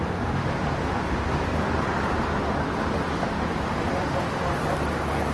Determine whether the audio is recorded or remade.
remade